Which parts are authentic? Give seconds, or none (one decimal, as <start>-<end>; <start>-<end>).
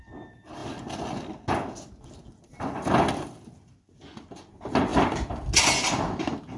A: 0.0-6.6